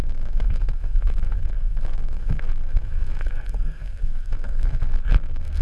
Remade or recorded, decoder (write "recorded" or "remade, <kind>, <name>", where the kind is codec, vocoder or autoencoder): remade, codec, SNAC